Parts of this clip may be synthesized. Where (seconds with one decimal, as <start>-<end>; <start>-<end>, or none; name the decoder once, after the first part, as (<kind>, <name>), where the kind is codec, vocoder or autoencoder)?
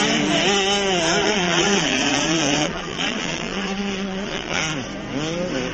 1.2-4.6 (vocoder, Vocos)